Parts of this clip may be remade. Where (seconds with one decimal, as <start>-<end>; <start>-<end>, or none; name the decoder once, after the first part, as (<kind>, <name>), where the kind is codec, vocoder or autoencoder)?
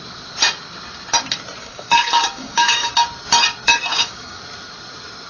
1.6-2.9 (codec, DAC); 3.9-4.4